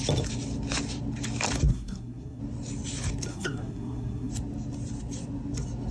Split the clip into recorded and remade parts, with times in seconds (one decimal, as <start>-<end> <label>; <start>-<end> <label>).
0.0-1.7 recorded; 1.7-2.4 remade; 2.4-3.3 recorded; 3.3-4.3 remade; 4.3-5.9 recorded